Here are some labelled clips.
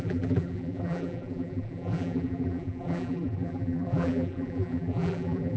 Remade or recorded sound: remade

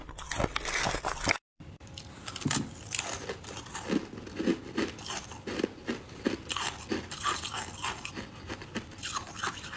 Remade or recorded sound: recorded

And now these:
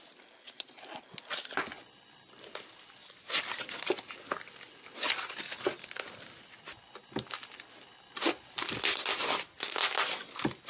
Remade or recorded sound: recorded